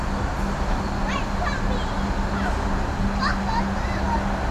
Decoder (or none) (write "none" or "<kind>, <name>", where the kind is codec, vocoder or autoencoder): none